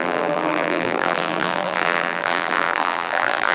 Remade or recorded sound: remade